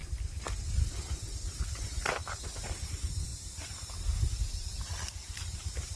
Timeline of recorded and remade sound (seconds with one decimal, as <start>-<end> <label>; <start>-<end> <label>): 0.0-6.0 recorded